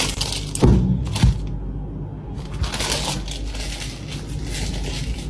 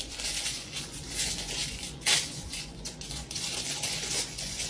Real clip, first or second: first